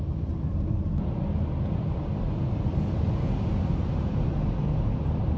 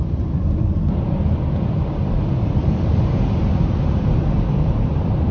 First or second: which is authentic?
first